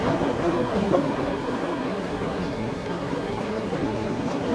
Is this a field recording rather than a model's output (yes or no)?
no